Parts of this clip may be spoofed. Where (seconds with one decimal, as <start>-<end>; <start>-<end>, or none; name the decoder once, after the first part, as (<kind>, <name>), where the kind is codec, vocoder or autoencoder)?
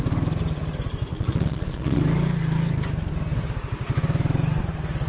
1.1-2.0 (vocoder, Vocos)